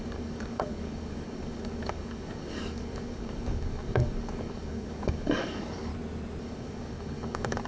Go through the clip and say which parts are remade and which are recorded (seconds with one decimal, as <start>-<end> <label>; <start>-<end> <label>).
0.0-5.9 remade; 5.9-6.4 recorded; 6.4-7.7 remade